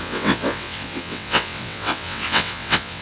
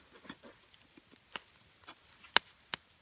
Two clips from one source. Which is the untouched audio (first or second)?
second